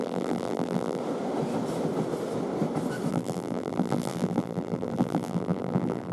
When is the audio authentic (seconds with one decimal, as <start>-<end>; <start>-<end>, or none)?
1.0-3.1